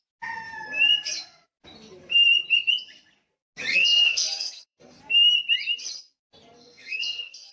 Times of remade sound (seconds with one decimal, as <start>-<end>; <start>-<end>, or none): 3.7-5.0; 6.6-7.5